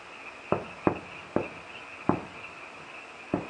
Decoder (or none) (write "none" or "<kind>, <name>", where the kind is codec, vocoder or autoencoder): none